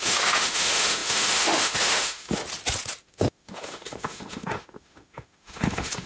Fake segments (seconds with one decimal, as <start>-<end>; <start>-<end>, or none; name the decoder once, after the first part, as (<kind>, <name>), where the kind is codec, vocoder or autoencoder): 0.0-2.4 (autoencoder, DAC-VAE); 3.0-6.1